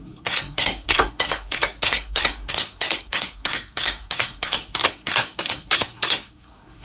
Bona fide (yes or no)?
no